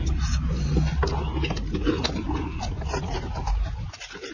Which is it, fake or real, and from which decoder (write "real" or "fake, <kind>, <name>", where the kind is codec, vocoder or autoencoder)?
real